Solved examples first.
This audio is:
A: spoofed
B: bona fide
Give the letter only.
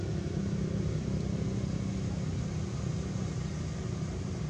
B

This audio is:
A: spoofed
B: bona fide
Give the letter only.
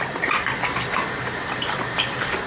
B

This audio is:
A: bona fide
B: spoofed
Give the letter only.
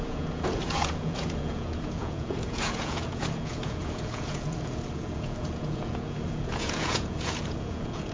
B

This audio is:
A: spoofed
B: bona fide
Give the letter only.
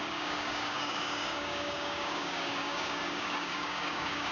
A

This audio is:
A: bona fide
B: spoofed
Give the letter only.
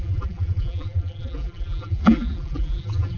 B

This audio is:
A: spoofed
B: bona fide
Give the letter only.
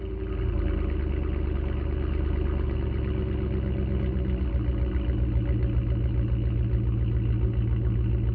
B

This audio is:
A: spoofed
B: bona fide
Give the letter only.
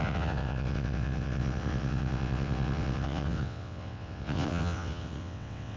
A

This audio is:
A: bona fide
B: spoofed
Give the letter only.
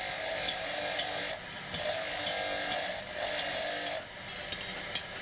A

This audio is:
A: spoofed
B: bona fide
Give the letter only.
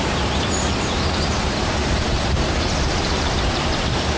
A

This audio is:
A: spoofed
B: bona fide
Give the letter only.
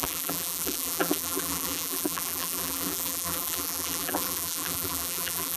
A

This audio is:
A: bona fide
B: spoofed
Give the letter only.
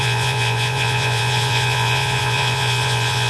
B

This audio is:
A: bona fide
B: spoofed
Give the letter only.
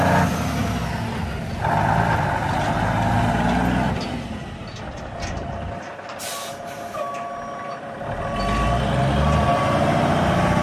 A